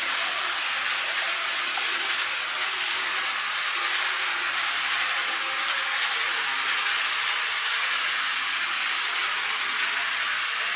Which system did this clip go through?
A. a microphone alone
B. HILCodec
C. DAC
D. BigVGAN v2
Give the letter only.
A